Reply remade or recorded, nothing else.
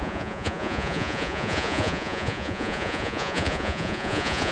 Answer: remade